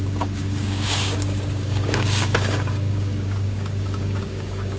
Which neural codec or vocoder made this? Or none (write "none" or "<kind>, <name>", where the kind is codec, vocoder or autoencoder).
codec, DAC